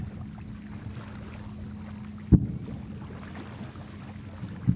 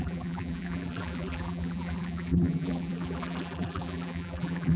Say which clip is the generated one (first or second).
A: second